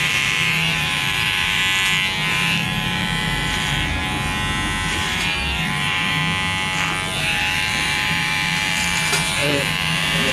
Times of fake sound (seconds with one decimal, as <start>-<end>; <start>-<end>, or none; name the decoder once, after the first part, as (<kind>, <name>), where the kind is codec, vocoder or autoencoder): 0.0-1.6 (vocoder, BigVGAN v2); 2.3-4.0; 4.9-6.2; 7.2-10.3